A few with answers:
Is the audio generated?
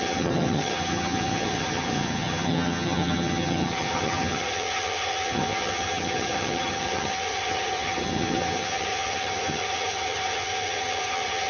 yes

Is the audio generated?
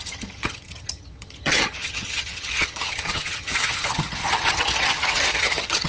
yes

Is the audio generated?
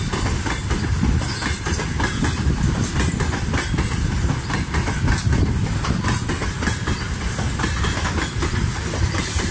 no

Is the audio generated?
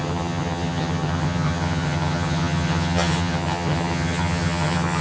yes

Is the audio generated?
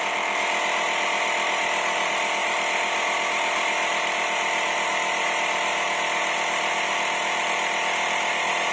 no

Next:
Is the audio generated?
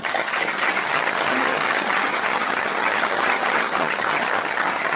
yes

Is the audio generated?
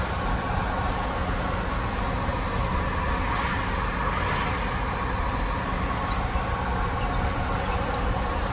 no